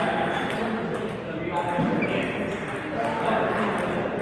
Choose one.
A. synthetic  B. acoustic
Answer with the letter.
B